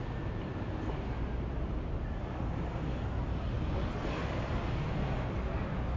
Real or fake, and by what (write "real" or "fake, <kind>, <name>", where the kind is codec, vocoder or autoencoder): real